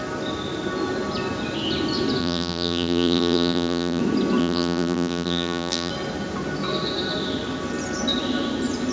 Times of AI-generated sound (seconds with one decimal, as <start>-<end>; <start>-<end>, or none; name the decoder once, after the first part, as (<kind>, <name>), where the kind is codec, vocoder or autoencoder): 2.2-4.0 (vocoder, BigVGAN v2); 4.4-5.9